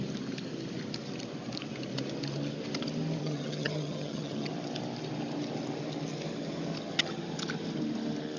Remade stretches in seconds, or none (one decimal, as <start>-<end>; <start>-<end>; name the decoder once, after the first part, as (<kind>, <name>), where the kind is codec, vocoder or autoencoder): 3.2-4.5 (vocoder, HiFi-GAN)